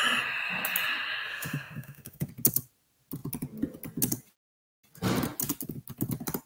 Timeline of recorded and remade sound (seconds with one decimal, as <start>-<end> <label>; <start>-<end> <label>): 0.0-1.3 recorded; 1.3-2.3 remade; 2.3-6.5 recorded